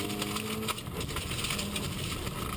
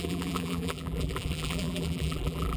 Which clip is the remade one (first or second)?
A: second